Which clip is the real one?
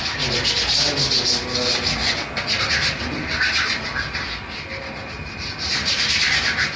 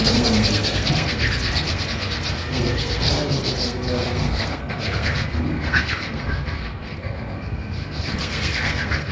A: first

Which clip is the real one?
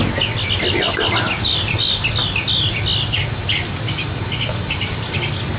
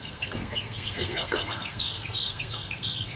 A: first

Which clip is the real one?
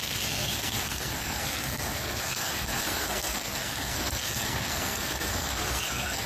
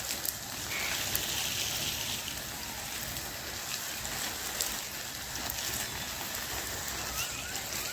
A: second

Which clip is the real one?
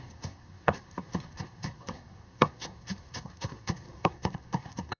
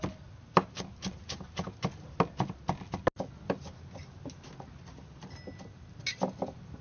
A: second